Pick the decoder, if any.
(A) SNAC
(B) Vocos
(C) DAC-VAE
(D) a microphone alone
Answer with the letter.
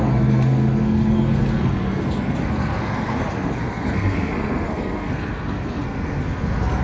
A